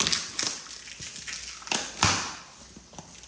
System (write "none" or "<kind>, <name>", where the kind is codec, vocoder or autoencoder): none